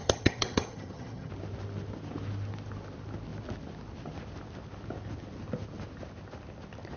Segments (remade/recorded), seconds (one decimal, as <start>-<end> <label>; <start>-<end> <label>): 0.0-1.3 remade; 1.3-7.0 recorded